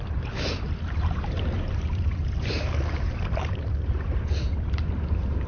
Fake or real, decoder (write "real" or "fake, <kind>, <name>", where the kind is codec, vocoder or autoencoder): fake, vocoder, BigVGAN v2